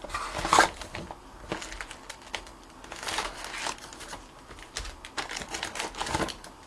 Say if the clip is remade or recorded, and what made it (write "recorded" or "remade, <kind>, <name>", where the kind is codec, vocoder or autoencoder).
recorded